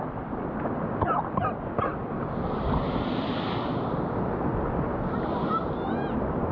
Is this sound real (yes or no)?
yes